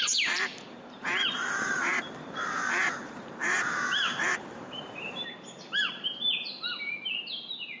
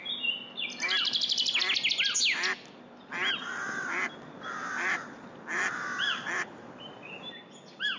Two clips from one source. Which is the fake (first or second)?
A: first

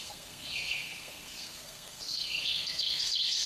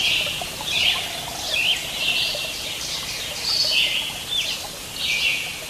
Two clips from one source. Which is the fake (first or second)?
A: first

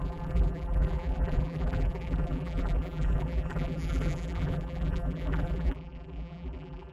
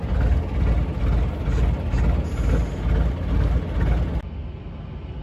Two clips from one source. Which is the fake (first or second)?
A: first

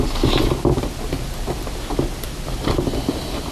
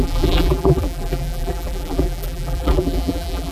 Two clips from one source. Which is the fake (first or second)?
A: second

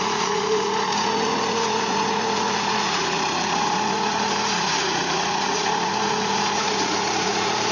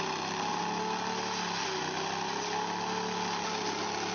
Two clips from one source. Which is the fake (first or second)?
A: first